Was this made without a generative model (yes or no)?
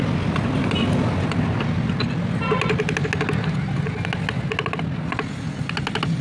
yes